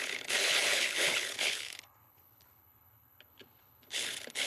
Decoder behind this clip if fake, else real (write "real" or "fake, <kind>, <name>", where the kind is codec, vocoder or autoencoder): fake, codec, HILCodec